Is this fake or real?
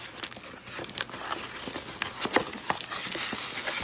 real